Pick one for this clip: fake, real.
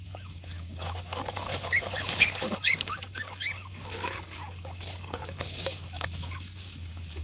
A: fake